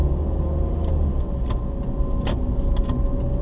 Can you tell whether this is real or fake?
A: real